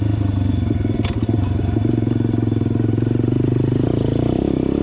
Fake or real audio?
real